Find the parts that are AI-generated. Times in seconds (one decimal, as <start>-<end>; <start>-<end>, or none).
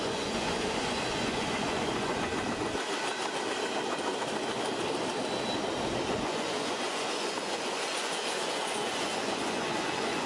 0.0-2.3; 6.1-10.3